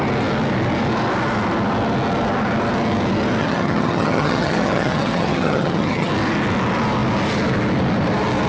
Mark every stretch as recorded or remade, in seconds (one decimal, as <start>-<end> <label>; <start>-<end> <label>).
0.0-3.4 recorded; 3.4-6.1 remade; 6.1-8.5 recorded